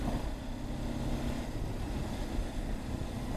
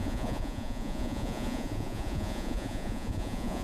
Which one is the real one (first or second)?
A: first